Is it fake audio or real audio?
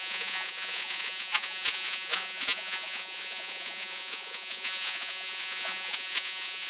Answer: fake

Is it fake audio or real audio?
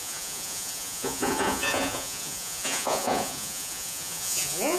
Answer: fake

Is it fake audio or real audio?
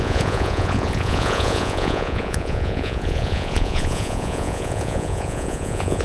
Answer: fake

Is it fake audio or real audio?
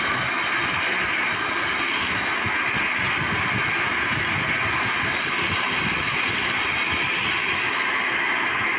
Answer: real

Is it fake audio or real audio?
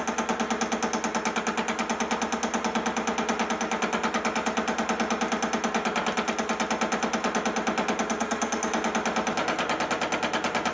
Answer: real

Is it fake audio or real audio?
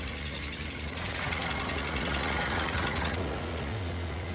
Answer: fake